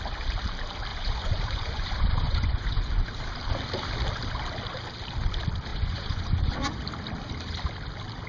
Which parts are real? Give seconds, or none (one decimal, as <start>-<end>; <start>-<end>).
0.0-0.9; 3.1-5.7; 6.8-8.3

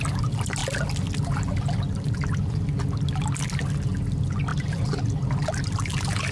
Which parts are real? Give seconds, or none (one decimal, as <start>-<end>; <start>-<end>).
0.0-6.3

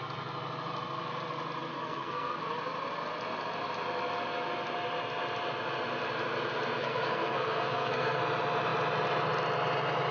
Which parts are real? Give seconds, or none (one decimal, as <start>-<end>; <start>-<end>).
0.0-1.7; 2.4-6.8; 8.2-10.1

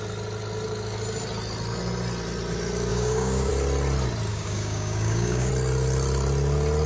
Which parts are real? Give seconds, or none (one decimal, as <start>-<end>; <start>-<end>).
0.0-2.9; 3.5-4.3; 5.5-6.9

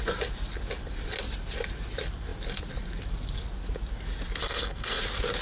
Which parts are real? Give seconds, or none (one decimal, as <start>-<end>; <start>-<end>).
0.0-4.4; 5.0-5.4

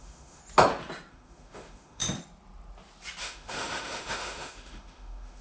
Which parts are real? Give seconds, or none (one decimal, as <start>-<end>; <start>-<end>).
0.4-1.1; 2.0-3.2

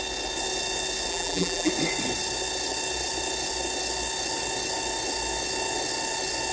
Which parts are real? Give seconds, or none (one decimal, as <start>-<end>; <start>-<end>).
0.0-1.1; 1.7-6.5